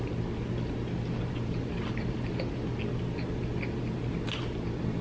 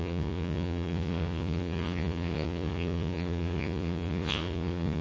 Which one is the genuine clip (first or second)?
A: first